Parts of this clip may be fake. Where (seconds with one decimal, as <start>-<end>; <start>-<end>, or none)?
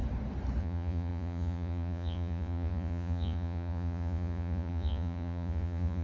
0.6-6.0